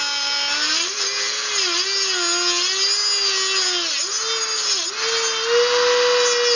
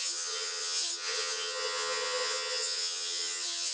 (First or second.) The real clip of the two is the first